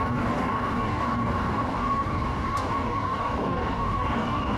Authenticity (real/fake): fake